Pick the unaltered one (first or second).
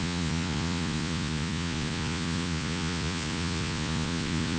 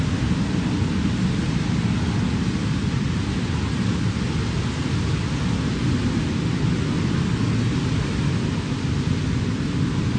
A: second